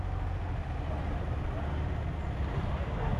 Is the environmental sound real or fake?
real